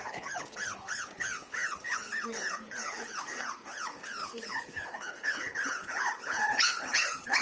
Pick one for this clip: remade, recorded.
remade